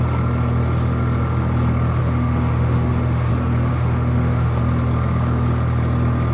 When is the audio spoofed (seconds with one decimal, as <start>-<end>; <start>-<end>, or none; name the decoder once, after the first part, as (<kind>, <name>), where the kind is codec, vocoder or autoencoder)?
2.0-3.3 (autoencoder, DAC-VAE); 3.7-4.6